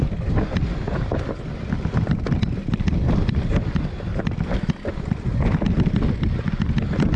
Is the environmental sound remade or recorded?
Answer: recorded